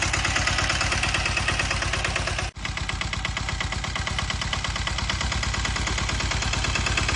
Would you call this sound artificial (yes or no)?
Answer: no